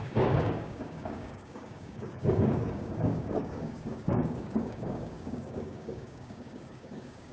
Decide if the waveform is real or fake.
fake